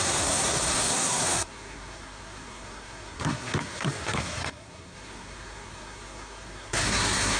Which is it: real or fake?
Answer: fake